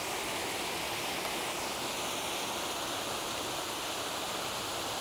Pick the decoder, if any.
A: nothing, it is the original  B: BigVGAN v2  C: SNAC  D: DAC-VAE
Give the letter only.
A